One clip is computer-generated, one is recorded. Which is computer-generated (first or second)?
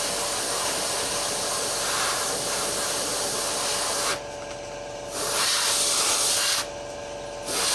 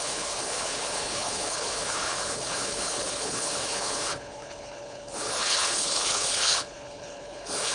second